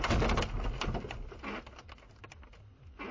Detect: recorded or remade recorded